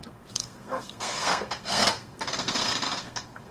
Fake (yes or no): yes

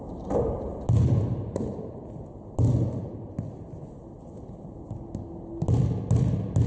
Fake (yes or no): no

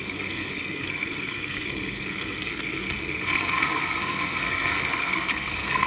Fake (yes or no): yes